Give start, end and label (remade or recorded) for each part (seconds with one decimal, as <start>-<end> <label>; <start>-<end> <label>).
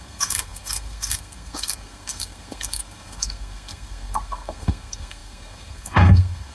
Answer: 0.0-6.5 remade